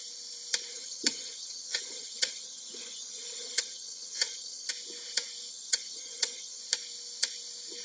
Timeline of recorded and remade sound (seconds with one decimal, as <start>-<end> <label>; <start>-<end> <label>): 0.0-0.7 recorded; 0.7-4.7 remade; 4.7-5.5 recorded; 5.5-6.6 remade; 6.6-7.8 recorded